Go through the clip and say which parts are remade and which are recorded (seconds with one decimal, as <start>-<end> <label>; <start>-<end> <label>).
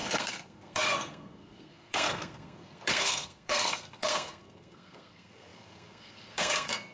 0.0-6.9 remade